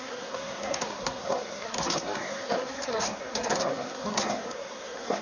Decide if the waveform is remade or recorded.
remade